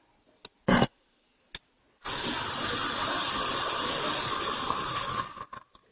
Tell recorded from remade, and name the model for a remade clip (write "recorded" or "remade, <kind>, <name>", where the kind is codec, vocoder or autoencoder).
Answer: recorded